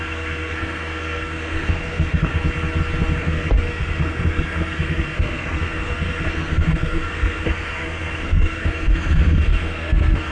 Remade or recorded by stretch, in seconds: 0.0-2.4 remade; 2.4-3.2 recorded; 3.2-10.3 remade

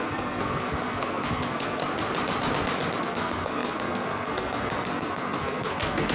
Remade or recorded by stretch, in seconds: 0.0-1.8 remade; 1.8-3.0 recorded; 3.0-6.1 remade

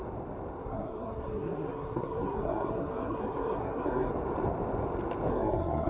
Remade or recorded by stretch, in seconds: 0.0-0.6 recorded; 0.6-4.1 remade; 4.1-5.3 recorded; 5.3-5.9 remade

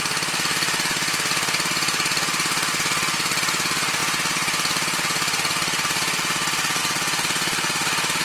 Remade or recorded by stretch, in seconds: 0.0-8.2 recorded

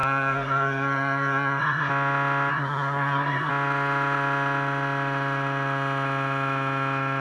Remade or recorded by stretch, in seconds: 0.0-1.9 remade; 1.9-2.5 recorded; 2.5-3.5 remade; 3.5-7.2 recorded